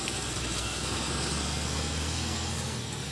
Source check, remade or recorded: remade